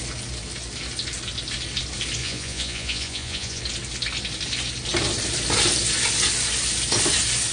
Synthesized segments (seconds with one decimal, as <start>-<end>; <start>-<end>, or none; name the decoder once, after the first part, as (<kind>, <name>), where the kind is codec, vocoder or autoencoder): 2.2-3.6 (vocoder, Vocos)